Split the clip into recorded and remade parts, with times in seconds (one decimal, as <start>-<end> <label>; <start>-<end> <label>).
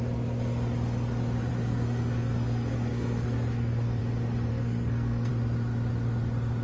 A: 0.0-1.5 recorded; 1.5-4.0 remade; 4.0-4.5 recorded; 4.5-5.3 remade; 5.3-6.6 recorded